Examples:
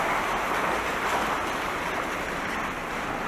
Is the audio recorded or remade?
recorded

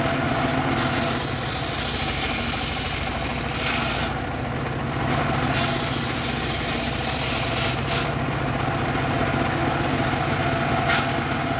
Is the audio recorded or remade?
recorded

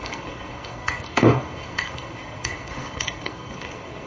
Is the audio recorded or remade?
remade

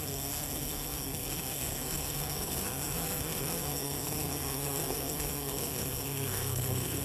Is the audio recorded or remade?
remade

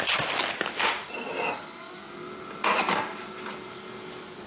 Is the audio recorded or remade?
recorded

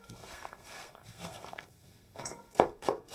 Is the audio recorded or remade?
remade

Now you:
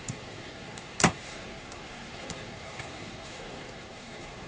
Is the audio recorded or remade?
remade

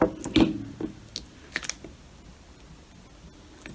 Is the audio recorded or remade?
recorded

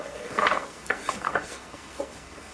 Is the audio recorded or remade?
remade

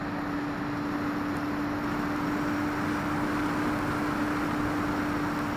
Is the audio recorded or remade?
recorded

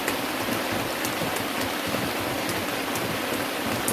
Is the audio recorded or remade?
recorded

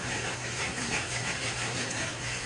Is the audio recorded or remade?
remade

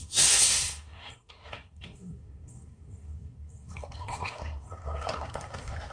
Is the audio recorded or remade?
remade